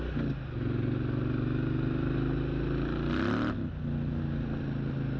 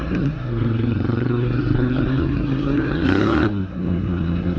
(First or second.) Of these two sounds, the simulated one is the second